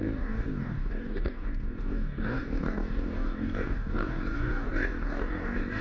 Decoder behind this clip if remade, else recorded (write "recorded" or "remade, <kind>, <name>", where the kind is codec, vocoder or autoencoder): remade, codec, DAC